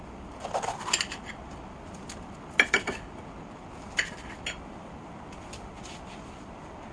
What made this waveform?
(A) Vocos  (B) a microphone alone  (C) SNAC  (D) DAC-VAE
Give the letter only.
B